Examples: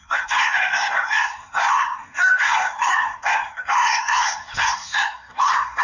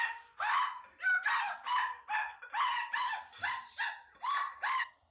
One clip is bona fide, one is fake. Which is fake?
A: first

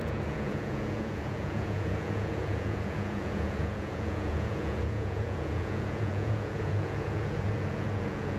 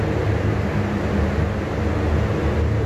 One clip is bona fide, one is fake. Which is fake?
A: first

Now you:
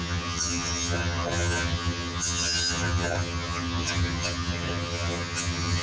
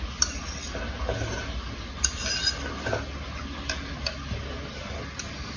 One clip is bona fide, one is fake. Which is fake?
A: first